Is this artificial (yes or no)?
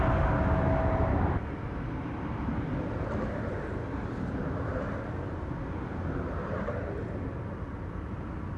no